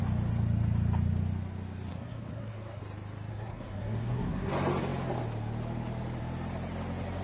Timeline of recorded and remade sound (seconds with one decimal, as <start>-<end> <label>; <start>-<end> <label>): 0.0-1.9 recorded; 1.9-2.8 remade; 2.8-3.3 recorded; 3.3-4.5 remade; 4.5-7.2 recorded